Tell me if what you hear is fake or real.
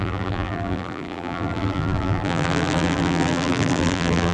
fake